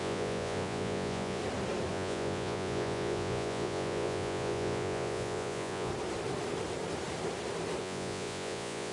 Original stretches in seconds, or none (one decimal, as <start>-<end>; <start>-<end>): 1.4-1.9; 5.9-7.8